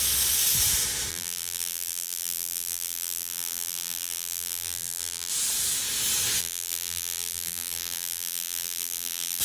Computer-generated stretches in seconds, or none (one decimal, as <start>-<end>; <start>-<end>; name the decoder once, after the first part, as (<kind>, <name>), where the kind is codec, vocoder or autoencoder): 1.1-5.3 (vocoder, BigVGAN v2); 6.4-9.4